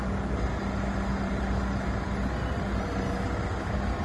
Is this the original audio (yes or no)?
yes